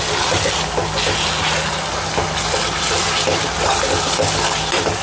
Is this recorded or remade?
recorded